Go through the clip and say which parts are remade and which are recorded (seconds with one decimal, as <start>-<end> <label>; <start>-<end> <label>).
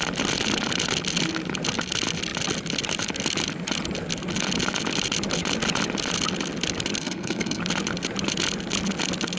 0.0-7.0 recorded; 7.0-7.6 remade; 7.6-9.4 recorded